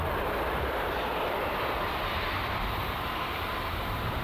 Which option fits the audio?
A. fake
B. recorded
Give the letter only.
A